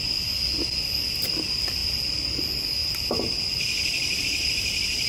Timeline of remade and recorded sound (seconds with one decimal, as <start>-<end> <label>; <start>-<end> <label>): 0.0-5.1 recorded